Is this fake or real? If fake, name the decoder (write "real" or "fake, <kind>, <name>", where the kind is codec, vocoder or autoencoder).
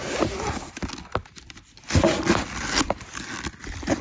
real